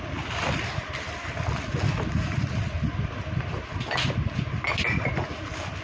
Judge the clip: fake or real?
real